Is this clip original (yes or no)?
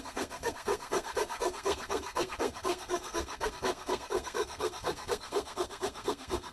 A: no